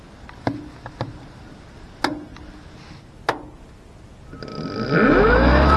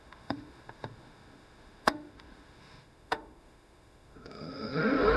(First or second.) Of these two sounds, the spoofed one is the second